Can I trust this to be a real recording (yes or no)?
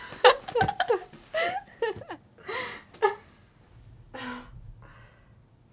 yes